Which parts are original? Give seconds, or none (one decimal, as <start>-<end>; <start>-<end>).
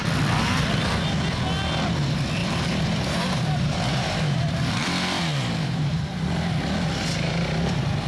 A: 0.0-2.4; 6.3-8.1